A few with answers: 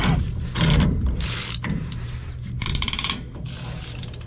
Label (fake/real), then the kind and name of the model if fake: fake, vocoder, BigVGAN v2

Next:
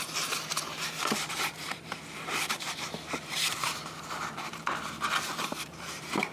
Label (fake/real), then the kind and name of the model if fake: fake, vocoder, BigVGAN v2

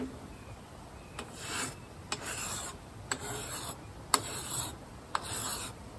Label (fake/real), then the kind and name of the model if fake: real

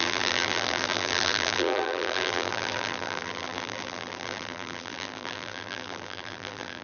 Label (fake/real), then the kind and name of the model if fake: fake, vocoder, BigVGAN v2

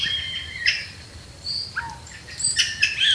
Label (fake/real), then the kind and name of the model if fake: real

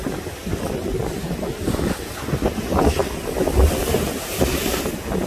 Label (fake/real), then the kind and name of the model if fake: real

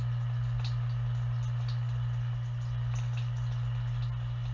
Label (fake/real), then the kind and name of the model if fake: real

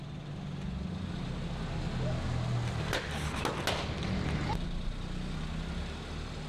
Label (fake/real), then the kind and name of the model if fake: real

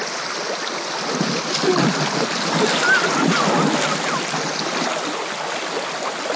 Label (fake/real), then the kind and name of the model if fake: real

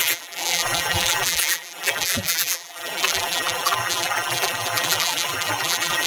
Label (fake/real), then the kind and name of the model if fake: fake, vocoder, BigVGAN v2